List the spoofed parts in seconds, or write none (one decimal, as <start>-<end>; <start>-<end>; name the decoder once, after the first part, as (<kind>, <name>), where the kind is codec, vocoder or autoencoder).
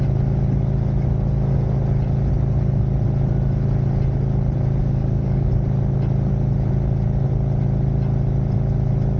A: 4.8-5.5 (codec, DAC)